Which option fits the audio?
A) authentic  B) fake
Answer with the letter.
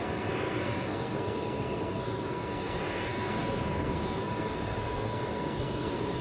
B